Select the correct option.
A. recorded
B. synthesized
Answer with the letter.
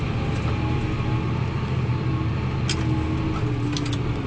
A